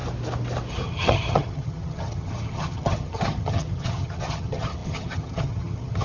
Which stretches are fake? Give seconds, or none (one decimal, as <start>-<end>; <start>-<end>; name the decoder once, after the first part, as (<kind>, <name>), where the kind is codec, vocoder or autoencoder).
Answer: 0.7-6.0 (vocoder, HiFi-GAN)